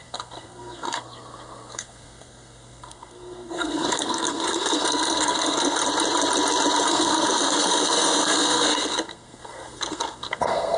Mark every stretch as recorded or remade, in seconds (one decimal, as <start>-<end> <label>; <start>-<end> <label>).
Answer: 0.0-5.8 remade; 5.8-6.8 recorded; 6.8-10.8 remade